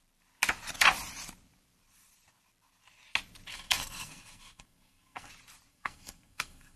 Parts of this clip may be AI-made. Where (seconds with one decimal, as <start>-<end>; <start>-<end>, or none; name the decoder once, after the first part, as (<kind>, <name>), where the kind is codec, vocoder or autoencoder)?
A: 3.5-5.3 (codec, SNAC); 5.7-6.8